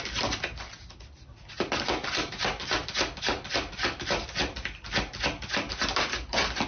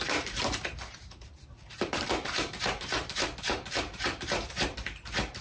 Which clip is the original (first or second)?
first